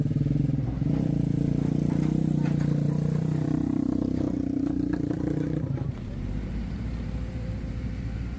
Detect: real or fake fake